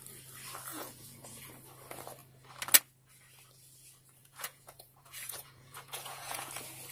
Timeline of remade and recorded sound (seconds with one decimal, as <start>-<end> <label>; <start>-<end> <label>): 0.0-0.7 recorded; 0.7-1.5 remade; 1.5-4.2 recorded; 4.2-6.5 remade; 6.5-6.9 recorded